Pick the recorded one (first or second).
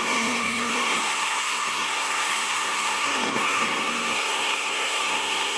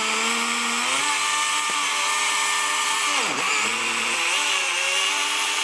second